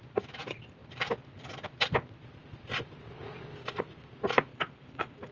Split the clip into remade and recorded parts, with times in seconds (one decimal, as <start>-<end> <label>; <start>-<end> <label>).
0.0-4.5 recorded; 4.5-5.3 remade